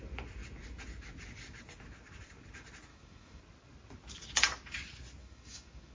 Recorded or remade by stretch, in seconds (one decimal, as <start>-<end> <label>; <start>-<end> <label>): 0.0-2.9 recorded; 2.9-3.4 remade; 3.4-5.2 recorded; 5.2-5.9 remade